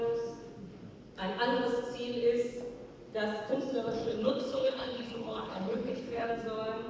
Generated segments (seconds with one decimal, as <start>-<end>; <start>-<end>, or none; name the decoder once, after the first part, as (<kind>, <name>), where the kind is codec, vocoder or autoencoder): 4.0-6.3 (codec, HILCodec)